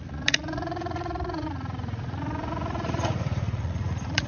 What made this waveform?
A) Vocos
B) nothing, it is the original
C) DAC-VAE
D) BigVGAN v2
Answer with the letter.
A